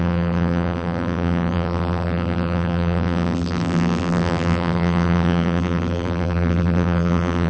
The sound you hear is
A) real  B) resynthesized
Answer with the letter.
B